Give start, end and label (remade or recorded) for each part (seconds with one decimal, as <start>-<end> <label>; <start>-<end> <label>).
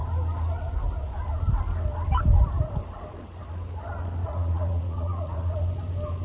0.0-4.2 recorded; 4.2-5.5 remade; 5.5-6.2 recorded